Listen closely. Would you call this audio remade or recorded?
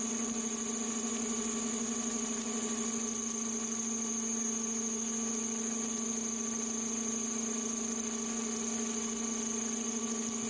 recorded